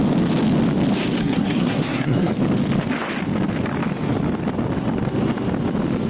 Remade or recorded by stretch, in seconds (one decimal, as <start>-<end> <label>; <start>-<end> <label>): 0.0-1.2 recorded; 1.2-2.3 remade; 2.3-6.1 recorded